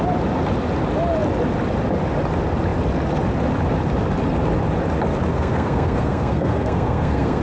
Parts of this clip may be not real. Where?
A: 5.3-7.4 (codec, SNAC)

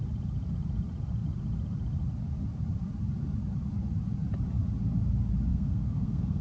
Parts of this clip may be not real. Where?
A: 5.5-6.4 (codec, SNAC)

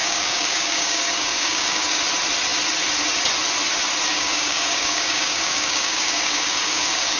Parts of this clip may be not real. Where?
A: 0.0-2.0 (codec, DAC); 4.1-7.2

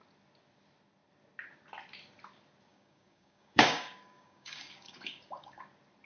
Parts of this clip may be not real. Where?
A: 2.7-5.6 (codec, DAC)

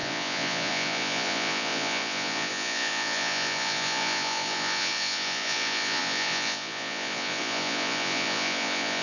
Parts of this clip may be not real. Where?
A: 0.0-9.0 (vocoder, Vocos)

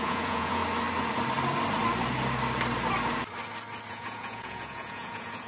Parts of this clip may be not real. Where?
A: 0.0-0.6 (vocoder, Vocos); 3.9-5.5

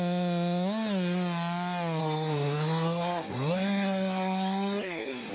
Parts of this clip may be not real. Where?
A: 2.0-5.3 (codec, SNAC)

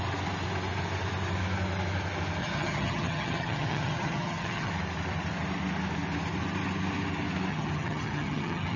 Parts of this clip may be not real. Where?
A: 2.4-4.7 (vocoder, HiFi-GAN); 7.5-8.8